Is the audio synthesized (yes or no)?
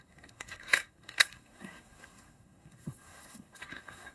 yes